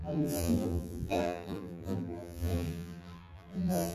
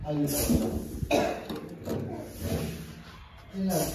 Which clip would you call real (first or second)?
second